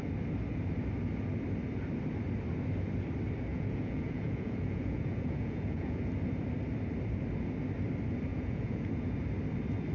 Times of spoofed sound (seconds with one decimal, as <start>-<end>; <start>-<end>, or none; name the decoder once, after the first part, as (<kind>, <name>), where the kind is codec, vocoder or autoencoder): 3.5-6.1 (vocoder, Vocos); 8.3-8.9

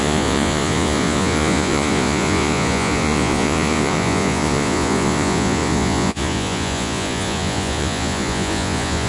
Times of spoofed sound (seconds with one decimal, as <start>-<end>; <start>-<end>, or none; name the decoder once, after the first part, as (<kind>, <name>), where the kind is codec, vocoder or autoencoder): 0.0-9.1 (vocoder, Vocos)

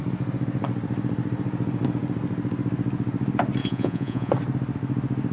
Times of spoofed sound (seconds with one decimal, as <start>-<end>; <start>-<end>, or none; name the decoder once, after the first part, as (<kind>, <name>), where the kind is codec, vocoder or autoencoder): 3.6-4.3 (vocoder, Vocos)

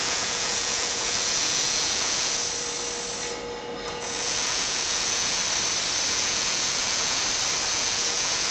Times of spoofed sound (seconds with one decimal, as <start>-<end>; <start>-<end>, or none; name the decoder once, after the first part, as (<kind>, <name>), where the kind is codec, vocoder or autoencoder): 0.0-2.4 (vocoder, Vocos); 3.9-5.4; 6.1-7.2; 7.7-8.5

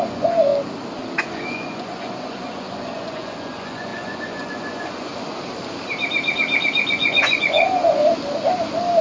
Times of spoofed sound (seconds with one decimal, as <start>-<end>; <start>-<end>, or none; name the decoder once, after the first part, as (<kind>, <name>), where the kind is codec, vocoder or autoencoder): 0.0-0.5 (vocoder, Vocos); 1.2-5.1; 6.9-8.0

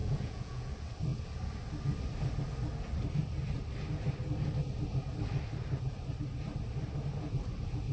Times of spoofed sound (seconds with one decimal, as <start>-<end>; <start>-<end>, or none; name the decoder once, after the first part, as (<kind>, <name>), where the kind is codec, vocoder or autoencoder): 0.0-0.7 (vocoder, Vocos)